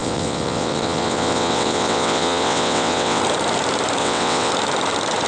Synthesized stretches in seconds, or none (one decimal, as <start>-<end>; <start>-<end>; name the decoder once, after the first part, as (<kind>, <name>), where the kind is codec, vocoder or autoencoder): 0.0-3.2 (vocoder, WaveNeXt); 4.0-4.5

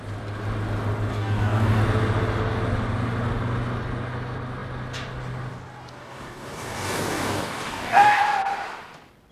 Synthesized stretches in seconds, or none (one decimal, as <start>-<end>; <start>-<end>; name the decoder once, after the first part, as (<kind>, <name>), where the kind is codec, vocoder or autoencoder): 1.1-1.8 (codec, DAC); 6.0-8.2

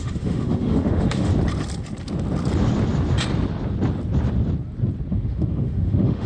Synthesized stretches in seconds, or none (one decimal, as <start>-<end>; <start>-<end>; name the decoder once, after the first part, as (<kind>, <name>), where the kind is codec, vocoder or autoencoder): 0.0-1.3 (autoencoder, DAC-VAE); 5.1-6.3

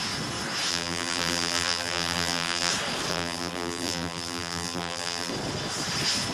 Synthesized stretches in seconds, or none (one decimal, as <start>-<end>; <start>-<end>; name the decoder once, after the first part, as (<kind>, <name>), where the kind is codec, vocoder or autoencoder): 0.7-2.7 (vocoder, BigVGAN v2); 3.1-5.3